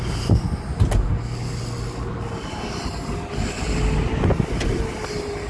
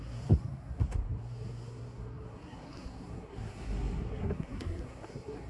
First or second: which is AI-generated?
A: second